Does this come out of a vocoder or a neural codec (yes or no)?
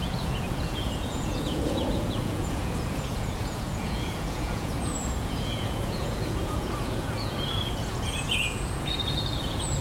yes